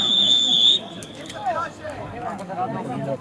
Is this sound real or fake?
fake